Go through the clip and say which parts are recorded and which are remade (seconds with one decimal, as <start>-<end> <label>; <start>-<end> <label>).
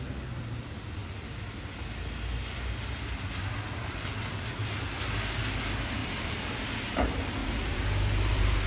0.0-6.0 recorded; 6.0-6.7 remade; 6.7-7.4 recorded; 7.4-8.7 remade